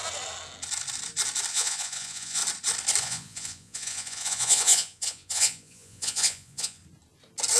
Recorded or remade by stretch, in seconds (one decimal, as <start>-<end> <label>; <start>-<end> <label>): 0.0-1.5 recorded; 1.5-2.4 remade; 2.4-3.0 recorded; 3.0-6.8 remade; 6.8-7.6 recorded